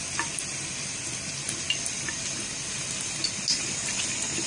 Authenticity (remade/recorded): recorded